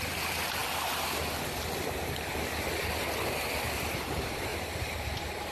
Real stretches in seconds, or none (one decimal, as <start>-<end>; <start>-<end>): 0.0-4.5